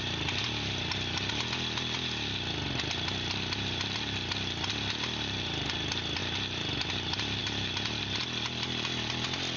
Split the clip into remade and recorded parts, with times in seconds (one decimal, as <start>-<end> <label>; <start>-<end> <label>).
0.0-9.6 recorded